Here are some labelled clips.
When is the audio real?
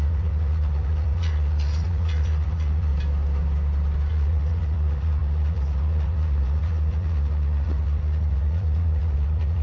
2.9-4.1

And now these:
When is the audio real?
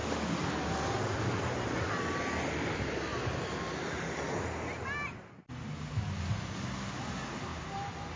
0.0-8.2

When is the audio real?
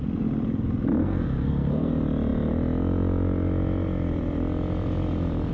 0.0-1.0; 1.9-5.5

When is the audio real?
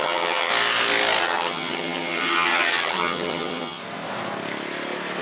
0.5-1.2; 3.8-5.2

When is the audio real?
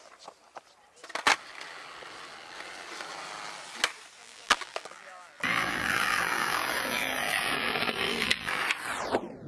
0.0-4.2; 8.6-9.5